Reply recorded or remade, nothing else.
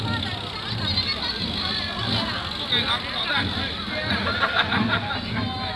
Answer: recorded